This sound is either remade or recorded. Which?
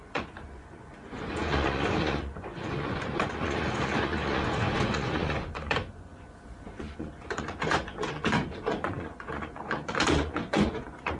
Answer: remade